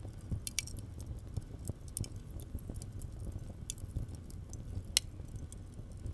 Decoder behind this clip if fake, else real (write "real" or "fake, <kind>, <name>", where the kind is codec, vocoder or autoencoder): real